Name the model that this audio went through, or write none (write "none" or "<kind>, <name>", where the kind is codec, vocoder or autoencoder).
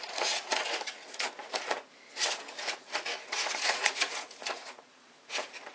vocoder, Vocos